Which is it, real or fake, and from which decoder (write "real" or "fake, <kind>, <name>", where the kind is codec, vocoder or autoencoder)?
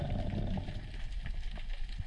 real